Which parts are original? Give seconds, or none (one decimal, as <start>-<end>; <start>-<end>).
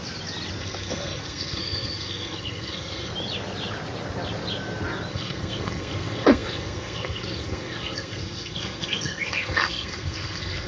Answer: 0.0-0.6; 3.1-5.1